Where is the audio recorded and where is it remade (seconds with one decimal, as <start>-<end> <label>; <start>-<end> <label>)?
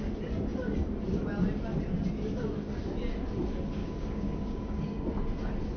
0.0-3.8 recorded; 3.8-4.8 remade; 4.8-5.8 recorded